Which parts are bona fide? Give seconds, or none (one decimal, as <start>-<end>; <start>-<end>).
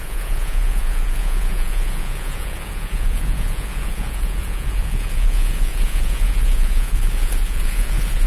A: none